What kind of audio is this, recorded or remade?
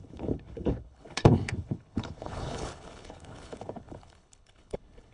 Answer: remade